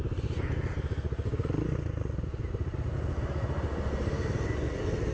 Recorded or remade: recorded